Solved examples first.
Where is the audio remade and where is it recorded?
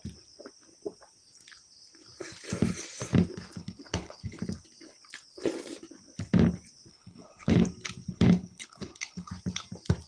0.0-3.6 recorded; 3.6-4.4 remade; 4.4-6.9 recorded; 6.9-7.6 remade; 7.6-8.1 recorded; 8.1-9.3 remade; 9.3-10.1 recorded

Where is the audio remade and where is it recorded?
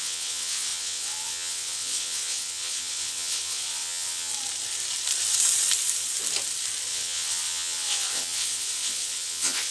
0.0-4.3 remade; 4.3-6.9 recorded; 6.9-9.7 remade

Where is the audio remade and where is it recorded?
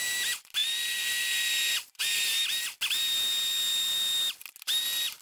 0.0-5.2 recorded